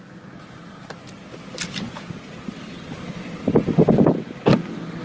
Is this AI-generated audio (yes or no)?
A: no